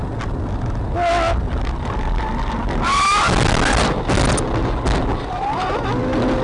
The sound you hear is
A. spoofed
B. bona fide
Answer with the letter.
B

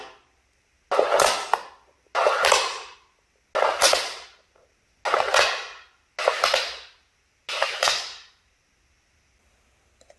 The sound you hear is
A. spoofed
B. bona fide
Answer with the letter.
B